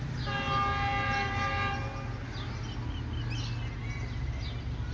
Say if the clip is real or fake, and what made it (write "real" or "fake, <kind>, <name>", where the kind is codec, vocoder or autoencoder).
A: real